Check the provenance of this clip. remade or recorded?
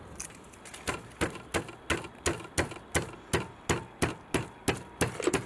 recorded